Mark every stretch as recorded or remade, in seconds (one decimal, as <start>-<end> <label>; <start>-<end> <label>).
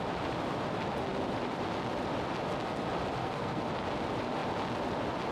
0.0-3.2 recorded; 3.2-3.7 remade; 3.7-5.3 recorded